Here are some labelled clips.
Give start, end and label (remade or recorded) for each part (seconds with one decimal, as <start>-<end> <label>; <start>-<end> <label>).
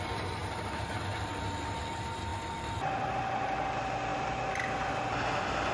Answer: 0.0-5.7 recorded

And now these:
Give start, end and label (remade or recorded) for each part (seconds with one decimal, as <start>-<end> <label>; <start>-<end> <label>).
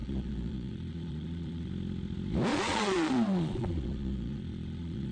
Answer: 0.0-1.7 remade; 1.7-2.5 recorded; 2.5-5.1 remade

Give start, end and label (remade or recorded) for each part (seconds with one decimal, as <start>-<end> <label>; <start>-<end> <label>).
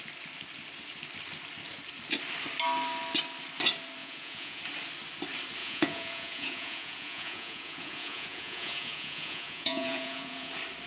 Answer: 0.0-4.0 recorded; 4.0-4.6 remade; 4.6-5.6 recorded; 5.6-10.5 remade; 10.5-10.9 recorded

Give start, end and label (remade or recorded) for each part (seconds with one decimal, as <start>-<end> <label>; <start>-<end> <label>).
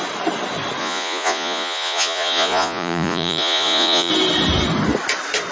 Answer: 0.0-0.8 recorded; 0.8-4.1 remade; 4.1-5.5 recorded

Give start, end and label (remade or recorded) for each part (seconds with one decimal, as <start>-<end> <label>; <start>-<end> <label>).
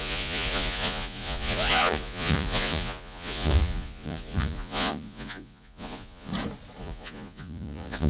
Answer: 0.0-6.3 remade; 6.3-6.8 recorded; 6.8-8.1 remade